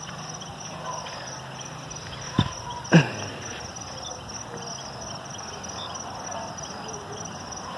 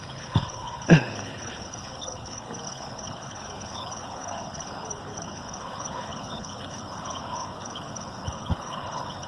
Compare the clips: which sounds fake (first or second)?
second